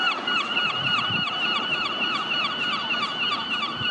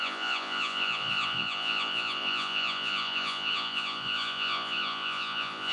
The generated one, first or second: second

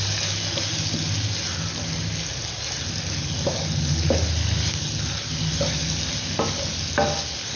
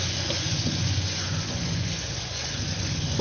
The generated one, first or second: second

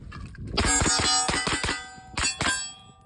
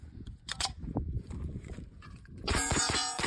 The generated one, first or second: second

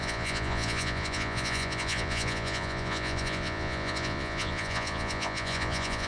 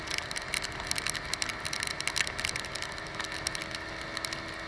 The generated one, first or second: first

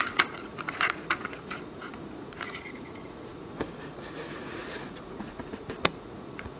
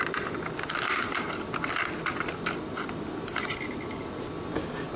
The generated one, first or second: first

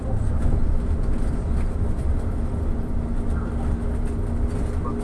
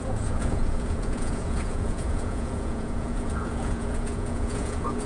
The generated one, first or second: second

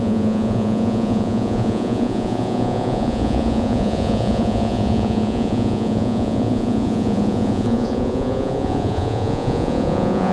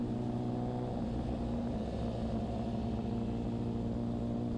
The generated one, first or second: first